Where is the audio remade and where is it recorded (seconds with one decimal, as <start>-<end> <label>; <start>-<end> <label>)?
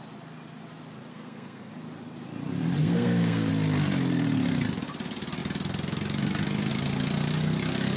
0.0-1.1 recorded; 1.1-1.7 remade; 1.7-2.8 recorded; 2.8-3.5 remade; 3.5-8.0 recorded